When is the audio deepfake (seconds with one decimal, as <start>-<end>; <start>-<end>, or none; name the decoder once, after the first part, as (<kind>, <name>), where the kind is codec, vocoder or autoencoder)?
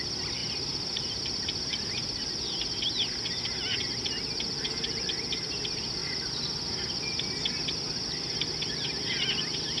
0.4-2.3 (vocoder, BigVGAN v2); 6.0-6.8